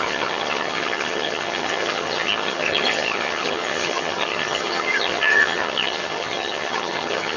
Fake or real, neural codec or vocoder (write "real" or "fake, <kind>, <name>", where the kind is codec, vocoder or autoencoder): fake, vocoder, HiFi-GAN